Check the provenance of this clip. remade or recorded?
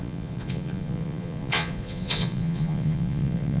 remade